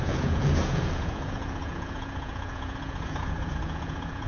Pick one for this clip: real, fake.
fake